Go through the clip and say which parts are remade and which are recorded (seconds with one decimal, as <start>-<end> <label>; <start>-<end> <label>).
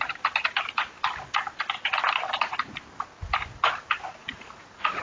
0.0-4.2 recorded; 4.2-5.0 remade